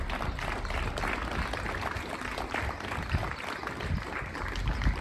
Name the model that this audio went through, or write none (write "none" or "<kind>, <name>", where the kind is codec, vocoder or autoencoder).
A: none